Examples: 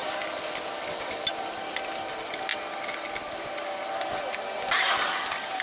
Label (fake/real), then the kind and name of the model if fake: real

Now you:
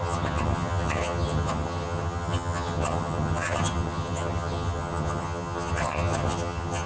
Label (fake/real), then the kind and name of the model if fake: fake, vocoder, HiFi-GAN